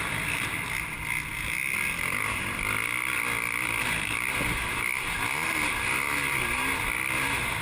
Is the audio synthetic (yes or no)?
no